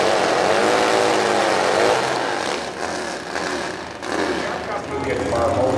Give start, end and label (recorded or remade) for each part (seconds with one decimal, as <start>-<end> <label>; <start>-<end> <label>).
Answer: 0.0-5.8 recorded